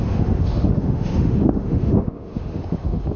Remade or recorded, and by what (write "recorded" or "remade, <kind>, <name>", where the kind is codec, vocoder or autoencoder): remade, autoencoder, DAC-VAE